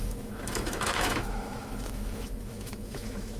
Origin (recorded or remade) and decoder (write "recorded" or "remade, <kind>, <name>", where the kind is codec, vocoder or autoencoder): remade, autoencoder, DAC-VAE